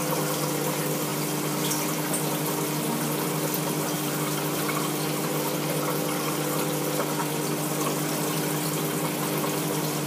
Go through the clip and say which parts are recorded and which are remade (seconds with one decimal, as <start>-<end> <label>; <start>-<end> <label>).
0.0-10.1 recorded